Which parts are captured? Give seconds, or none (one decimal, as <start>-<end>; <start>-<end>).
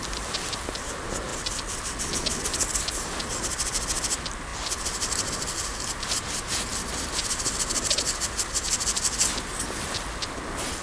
0.0-10.8